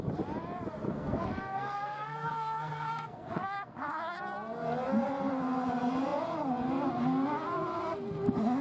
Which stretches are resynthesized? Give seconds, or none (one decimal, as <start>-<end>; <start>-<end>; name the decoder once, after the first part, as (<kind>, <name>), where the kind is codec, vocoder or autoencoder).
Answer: 0.8-4.2 (codec, SNAC)